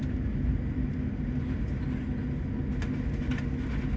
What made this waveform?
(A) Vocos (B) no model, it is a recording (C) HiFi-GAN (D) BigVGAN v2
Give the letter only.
B